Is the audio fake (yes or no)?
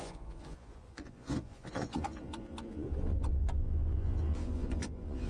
yes